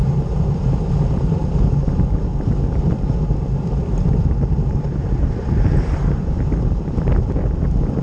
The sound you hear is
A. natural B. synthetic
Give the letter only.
B